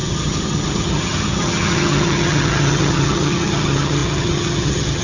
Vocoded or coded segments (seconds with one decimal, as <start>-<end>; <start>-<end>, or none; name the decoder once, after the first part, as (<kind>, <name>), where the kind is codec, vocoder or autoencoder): 0.0-5.0 (vocoder, HiFi-GAN)